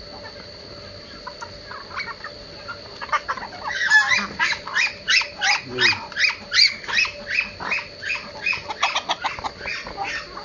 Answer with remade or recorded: recorded